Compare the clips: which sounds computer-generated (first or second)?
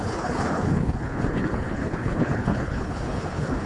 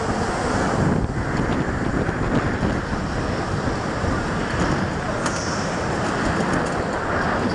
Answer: first